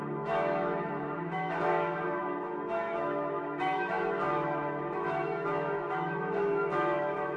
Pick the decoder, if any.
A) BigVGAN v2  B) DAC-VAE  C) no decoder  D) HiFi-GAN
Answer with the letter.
B